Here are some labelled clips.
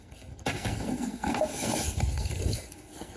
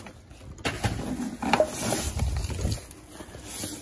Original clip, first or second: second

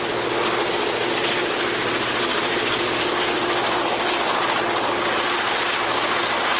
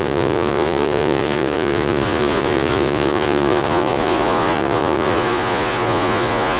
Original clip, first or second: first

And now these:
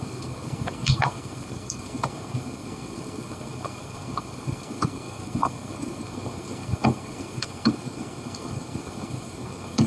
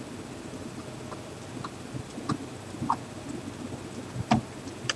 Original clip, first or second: second